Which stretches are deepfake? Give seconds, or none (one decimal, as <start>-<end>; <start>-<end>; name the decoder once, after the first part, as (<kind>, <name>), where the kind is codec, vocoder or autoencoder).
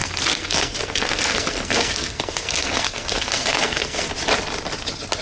0.0-4.1 (codec, SNAC)